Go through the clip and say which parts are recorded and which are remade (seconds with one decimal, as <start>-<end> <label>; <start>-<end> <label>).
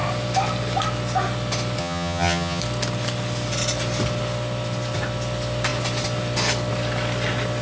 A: 0.0-1.8 recorded; 1.8-2.6 remade; 2.6-7.6 recorded